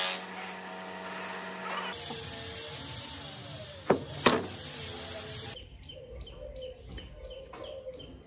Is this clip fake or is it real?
real